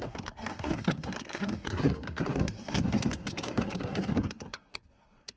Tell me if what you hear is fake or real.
fake